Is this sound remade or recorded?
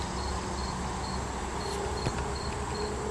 recorded